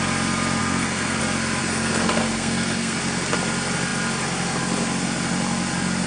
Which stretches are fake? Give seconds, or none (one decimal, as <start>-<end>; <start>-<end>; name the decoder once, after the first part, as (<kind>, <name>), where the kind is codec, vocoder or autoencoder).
0.6-1.2 (codec, SNAC); 1.6-3.0